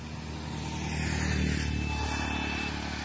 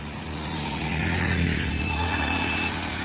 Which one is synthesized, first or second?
second